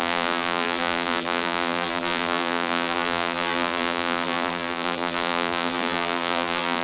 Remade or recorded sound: remade